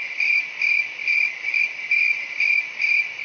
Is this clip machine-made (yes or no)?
no